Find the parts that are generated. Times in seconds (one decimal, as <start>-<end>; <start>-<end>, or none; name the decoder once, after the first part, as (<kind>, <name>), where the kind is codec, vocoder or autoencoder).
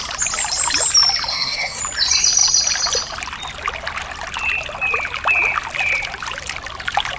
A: 1.3-1.8 (codec, SNAC)